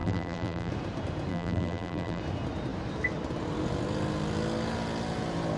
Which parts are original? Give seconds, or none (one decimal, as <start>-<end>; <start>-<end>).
0.7-1.3; 2.2-5.6